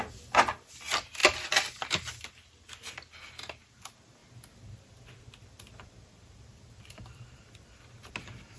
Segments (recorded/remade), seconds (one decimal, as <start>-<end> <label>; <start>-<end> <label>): 0.0-4.2 recorded; 4.2-7.6 remade; 7.6-8.6 recorded